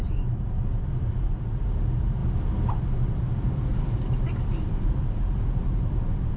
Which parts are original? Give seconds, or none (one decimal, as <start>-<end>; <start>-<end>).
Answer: 0.0-3.7; 5.1-6.4